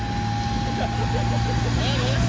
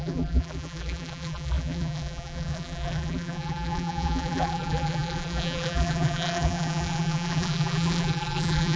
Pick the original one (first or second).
first